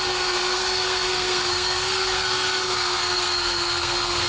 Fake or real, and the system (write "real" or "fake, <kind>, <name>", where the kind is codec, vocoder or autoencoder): fake, codec, SNAC